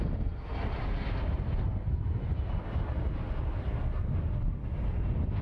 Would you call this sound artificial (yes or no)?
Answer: no